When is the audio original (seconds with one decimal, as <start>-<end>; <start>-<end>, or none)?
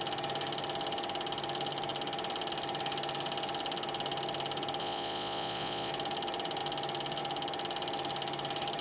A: 0.0-4.8; 5.9-8.8